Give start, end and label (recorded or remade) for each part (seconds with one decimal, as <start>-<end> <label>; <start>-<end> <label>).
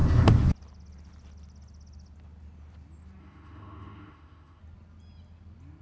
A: 0.0-3.2 recorded; 3.2-4.6 remade; 4.6-5.8 recorded